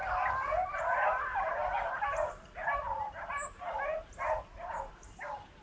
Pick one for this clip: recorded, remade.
recorded